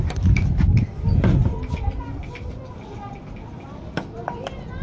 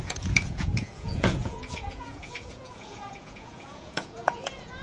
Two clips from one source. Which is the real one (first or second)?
first